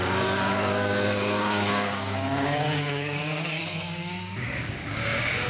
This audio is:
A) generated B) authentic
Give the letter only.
A